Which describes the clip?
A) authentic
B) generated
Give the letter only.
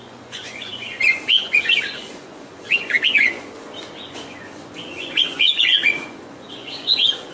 B